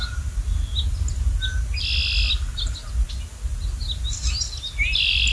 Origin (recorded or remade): recorded